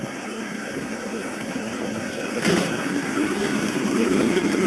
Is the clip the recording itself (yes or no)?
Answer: no